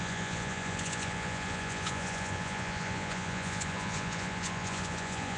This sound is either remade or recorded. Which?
remade